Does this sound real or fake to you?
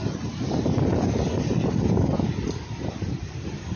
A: real